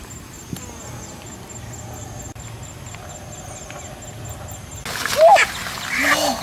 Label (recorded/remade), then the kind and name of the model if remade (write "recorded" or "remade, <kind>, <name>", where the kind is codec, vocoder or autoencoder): recorded